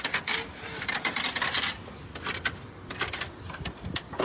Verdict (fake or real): fake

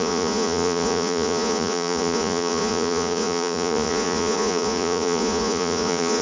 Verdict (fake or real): fake